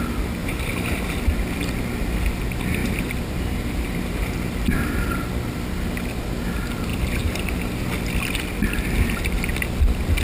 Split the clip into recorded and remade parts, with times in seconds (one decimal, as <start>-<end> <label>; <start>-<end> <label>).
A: 0.0-0.4 recorded; 0.4-1.2 remade; 1.2-2.8 recorded; 2.8-4.3 remade; 4.3-6.9 recorded; 6.9-7.8 remade; 7.8-10.2 recorded